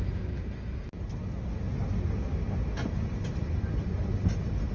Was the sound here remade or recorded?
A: recorded